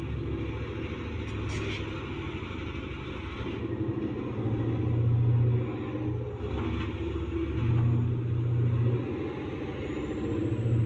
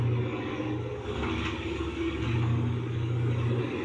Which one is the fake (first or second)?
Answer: second